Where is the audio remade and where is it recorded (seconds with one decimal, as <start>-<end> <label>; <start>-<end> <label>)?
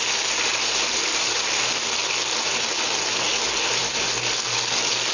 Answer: 0.0-0.5 recorded; 0.5-3.4 remade; 3.4-3.8 recorded; 3.8-4.4 remade; 4.4-5.1 recorded